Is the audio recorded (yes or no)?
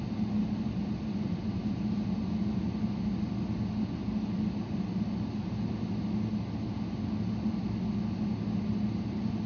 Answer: yes